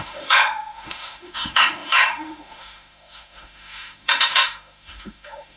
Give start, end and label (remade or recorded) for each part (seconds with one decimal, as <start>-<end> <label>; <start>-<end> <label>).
0.0-5.6 remade